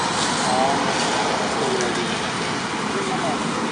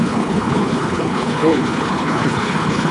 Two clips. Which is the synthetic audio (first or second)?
second